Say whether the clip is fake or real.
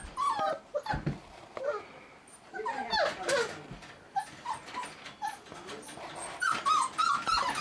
real